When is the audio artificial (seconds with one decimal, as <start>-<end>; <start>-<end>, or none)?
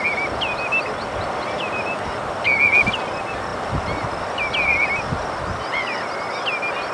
none